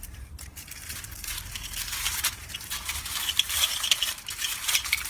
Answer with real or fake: fake